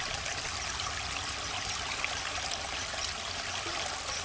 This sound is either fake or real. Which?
real